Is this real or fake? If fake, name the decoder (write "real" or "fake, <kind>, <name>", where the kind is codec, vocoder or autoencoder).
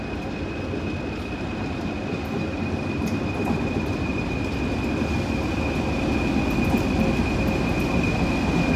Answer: real